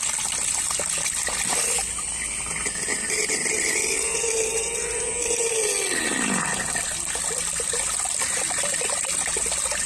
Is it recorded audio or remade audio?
recorded